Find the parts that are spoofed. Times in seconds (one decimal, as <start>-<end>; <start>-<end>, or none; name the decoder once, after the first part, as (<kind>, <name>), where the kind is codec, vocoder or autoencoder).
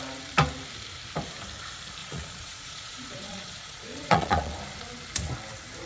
2.0-4.5 (vocoder, Vocos)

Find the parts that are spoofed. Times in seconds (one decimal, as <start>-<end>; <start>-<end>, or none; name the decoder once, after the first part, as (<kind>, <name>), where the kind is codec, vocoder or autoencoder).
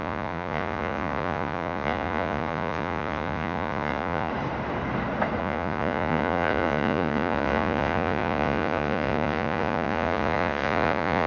0.0-4.3 (vocoder, Vocos); 5.4-11.3